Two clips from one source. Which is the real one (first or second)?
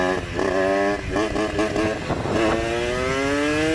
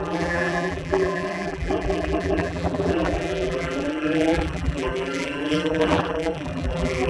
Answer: first